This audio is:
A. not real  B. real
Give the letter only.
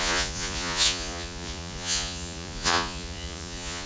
A